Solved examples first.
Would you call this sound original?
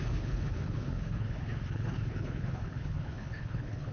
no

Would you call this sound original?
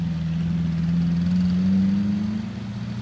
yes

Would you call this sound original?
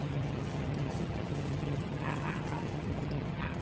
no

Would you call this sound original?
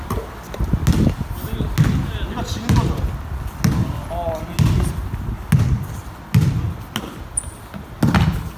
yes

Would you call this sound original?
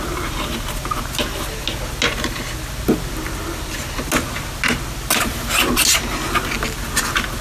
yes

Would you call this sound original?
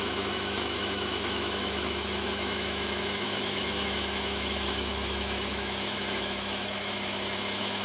no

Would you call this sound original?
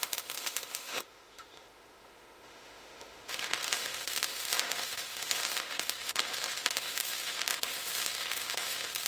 no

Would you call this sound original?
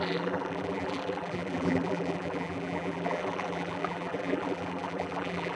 no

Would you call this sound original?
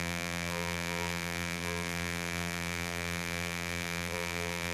no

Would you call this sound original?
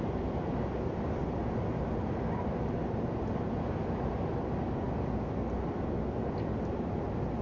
yes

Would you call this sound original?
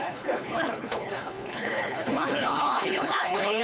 no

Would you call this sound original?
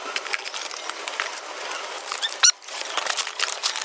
yes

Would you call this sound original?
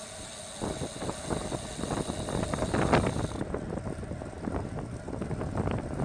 yes